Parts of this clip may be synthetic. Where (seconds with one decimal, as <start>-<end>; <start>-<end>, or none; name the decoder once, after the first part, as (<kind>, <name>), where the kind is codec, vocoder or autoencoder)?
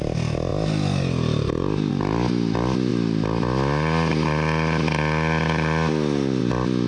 none